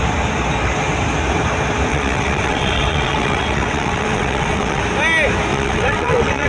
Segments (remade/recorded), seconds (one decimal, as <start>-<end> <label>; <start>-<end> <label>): 0.0-1.9 recorded; 1.9-4.8 remade; 4.8-5.5 recorded; 5.5-6.5 remade